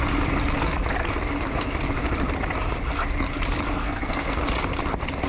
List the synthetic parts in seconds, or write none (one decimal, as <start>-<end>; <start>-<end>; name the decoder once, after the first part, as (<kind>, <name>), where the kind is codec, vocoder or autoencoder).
3.8-4.4 (codec, SNAC)